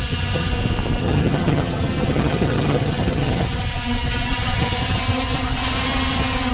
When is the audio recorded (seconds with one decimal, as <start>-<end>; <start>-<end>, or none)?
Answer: 0.5-1.0